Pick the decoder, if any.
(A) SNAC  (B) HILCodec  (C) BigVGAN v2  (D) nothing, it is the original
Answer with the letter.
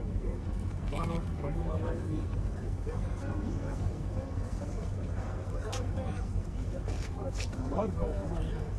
A